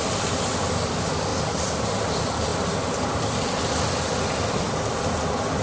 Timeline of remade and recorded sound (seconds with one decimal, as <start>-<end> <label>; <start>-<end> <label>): 0.0-5.6 recorded